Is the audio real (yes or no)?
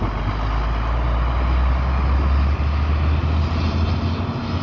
yes